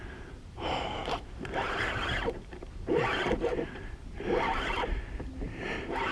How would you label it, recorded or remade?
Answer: remade